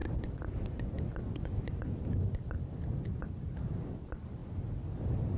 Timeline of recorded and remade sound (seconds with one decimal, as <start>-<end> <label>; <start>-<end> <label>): 0.0-5.4 recorded